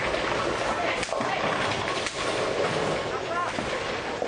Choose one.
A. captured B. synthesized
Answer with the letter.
A